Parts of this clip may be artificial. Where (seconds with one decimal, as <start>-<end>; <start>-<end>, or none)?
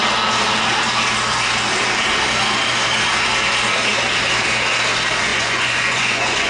5.3-6.5